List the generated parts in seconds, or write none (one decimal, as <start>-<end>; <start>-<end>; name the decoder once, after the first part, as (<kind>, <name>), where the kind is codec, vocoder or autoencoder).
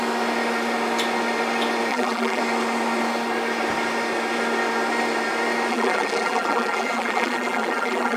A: 1.9-2.4 (vocoder, BigVGAN v2); 5.7-8.2